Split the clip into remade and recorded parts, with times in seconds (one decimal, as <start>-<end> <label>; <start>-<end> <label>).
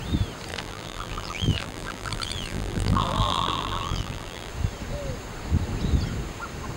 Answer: 0.0-0.5 recorded; 0.5-4.5 remade; 4.5-6.8 recorded